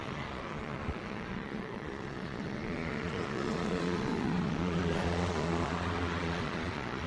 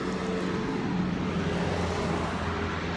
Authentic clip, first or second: second